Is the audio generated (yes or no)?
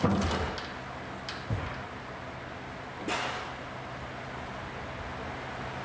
no